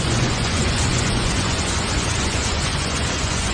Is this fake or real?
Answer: fake